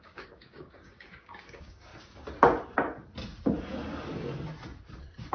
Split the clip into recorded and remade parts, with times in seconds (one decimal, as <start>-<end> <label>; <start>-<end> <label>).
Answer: 0.0-1.9 remade; 1.9-5.3 recorded